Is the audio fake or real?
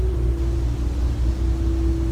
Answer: real